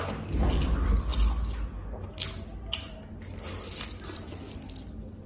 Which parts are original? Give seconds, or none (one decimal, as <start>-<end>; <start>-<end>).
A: 0.0-5.3